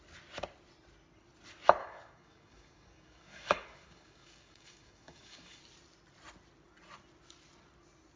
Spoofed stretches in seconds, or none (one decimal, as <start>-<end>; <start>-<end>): 1.8-5.6